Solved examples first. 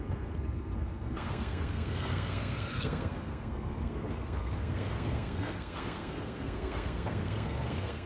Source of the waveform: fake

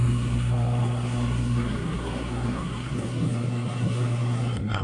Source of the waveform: fake